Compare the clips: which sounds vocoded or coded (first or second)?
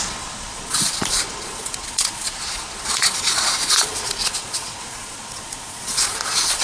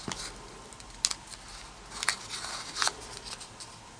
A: first